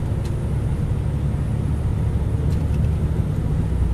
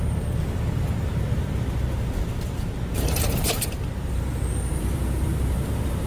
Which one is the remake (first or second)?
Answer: second